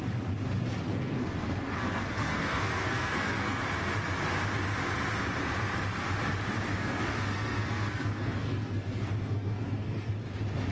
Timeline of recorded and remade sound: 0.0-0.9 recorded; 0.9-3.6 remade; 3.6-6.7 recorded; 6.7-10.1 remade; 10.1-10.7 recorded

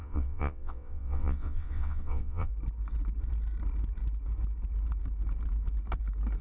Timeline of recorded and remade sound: 0.0-2.5 remade; 2.5-6.4 recorded